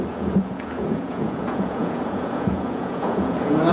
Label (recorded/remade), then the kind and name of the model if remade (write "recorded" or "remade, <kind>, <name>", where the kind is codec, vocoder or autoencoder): remade, vocoder, Vocos